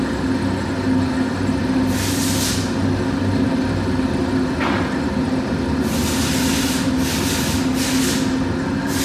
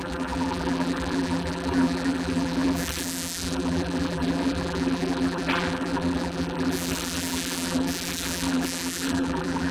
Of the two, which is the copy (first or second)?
second